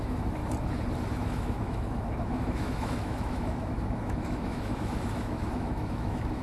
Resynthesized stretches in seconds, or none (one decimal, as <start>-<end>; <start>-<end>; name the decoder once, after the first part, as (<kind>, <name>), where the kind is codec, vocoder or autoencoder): 0.0-0.4 (autoencoder, DAC-VAE); 1.1-6.4